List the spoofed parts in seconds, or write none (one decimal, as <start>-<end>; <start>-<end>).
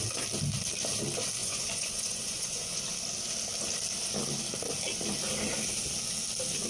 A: 1.4-2.8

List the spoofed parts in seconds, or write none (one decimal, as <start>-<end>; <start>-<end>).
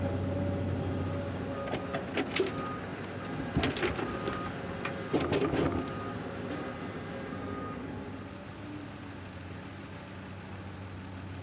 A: none